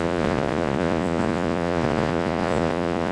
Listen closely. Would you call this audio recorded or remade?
remade